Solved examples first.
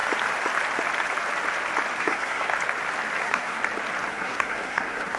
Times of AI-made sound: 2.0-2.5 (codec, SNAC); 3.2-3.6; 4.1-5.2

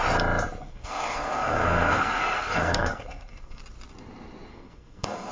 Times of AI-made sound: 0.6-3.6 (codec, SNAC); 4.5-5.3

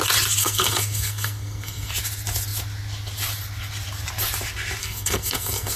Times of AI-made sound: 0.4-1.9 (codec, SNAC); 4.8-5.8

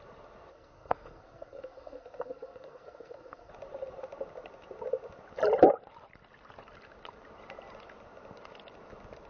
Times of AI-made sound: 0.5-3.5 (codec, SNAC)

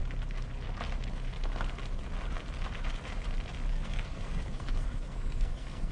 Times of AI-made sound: 3.7-5.9 (codec, SNAC)

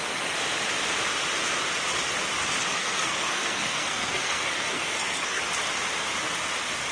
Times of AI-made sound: 2.7-5.4 (codec, SNAC)